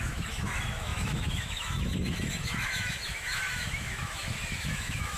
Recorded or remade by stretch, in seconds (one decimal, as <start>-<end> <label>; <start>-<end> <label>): 0.0-5.2 remade

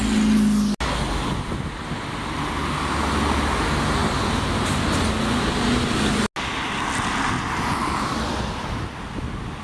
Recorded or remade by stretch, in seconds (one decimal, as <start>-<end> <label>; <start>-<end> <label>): 0.0-9.6 recorded

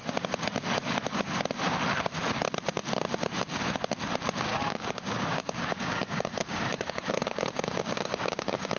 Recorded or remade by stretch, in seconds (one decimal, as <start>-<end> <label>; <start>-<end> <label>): 0.0-4.5 recorded; 4.5-8.8 remade

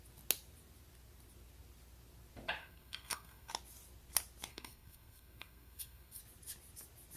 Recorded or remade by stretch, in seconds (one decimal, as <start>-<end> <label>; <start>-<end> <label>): 0.0-2.6 recorded; 2.6-3.5 remade; 3.5-4.5 recorded; 4.5-6.2 remade; 6.2-7.2 recorded

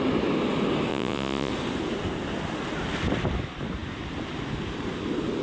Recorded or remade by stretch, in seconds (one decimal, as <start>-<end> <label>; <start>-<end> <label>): 0.0-0.9 recorded; 0.9-1.5 remade; 1.5-5.4 recorded

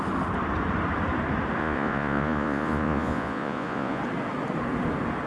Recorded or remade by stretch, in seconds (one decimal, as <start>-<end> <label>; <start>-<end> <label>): 0.0-1.6 recorded; 1.6-4.0 remade; 4.0-5.3 recorded